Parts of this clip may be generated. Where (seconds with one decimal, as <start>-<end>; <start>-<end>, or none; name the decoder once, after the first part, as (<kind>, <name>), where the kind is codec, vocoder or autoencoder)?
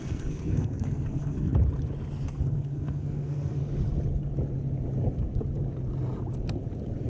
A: 0.0-1.5 (codec, SNAC); 2.3-3.6